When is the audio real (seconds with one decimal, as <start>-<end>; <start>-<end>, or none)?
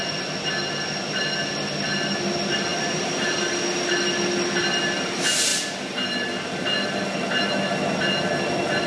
0.0-2.7; 3.9-5.5; 7.0-8.9